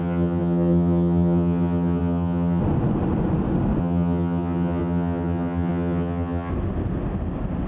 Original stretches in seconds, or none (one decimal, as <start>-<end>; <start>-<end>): 2.6-3.8; 6.5-7.7